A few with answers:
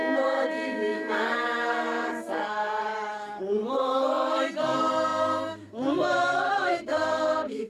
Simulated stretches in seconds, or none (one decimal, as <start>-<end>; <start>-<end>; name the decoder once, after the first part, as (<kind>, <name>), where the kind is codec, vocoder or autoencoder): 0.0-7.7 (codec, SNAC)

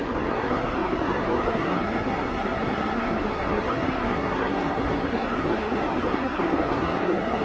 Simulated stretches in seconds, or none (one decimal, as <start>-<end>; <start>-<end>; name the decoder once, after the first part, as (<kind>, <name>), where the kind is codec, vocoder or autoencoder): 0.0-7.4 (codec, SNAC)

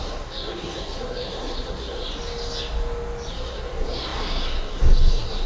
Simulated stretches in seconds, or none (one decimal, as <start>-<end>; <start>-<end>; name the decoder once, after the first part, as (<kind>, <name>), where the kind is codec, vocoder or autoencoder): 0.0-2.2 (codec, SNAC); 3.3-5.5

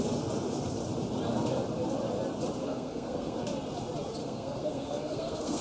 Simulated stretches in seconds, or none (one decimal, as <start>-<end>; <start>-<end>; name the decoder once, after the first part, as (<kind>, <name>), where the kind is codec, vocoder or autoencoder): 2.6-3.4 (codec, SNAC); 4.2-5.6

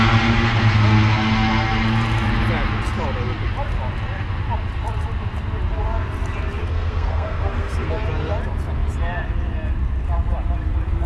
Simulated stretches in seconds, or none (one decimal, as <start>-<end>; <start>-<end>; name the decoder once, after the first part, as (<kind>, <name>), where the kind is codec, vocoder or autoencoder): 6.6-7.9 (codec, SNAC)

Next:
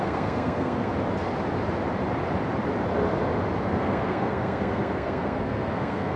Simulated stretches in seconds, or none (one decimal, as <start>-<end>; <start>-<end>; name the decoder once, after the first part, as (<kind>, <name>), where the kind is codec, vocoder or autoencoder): 0.0-0.9 (codec, SNAC); 3.6-6.2